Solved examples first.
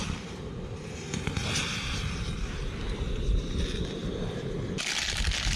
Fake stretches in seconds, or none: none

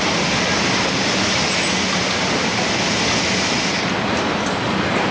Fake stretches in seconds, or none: none

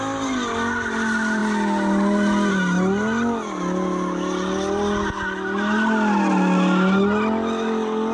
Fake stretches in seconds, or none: none